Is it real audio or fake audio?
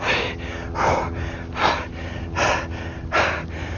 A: real